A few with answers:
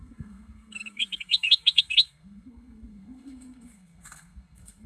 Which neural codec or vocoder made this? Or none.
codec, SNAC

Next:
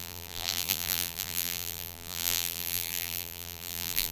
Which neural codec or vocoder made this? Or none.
vocoder, BigVGAN v2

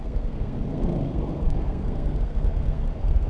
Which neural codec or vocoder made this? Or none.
codec, SNAC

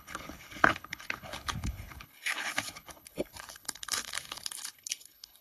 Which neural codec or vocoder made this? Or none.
codec, HILCodec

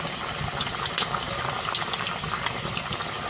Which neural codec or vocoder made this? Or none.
none